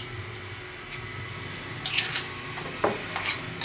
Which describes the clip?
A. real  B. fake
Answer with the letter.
A